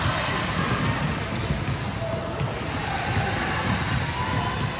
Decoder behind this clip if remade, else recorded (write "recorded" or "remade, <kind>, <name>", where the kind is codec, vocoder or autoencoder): recorded